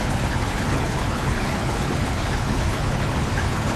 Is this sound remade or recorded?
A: remade